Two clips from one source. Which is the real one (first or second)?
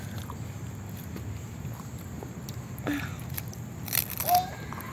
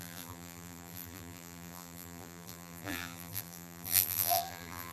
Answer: first